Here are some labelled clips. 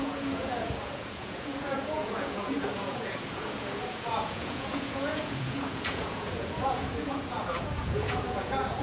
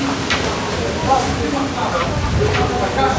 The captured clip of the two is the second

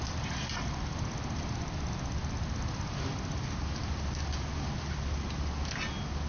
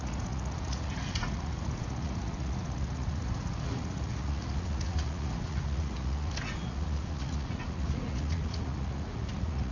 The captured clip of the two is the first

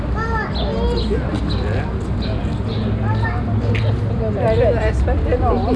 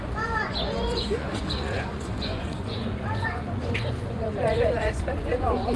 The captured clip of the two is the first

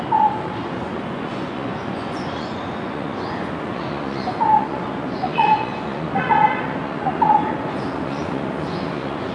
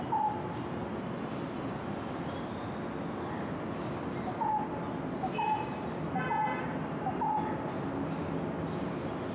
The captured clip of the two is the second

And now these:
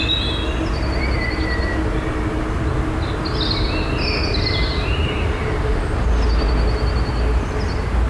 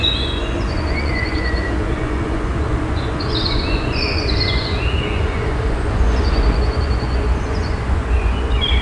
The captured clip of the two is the first